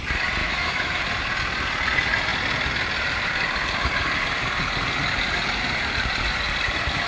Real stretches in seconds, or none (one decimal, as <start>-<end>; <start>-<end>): 0.0-0.4; 1.0-7.1